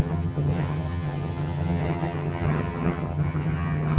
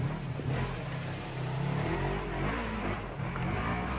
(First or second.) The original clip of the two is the second